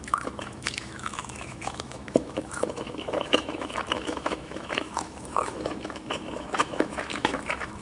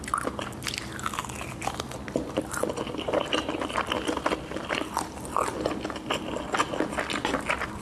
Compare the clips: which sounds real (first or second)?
second